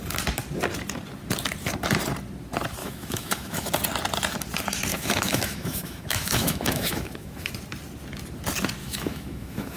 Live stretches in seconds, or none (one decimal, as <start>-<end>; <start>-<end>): 0.0-2.8; 3.7-4.9; 7.5-8.8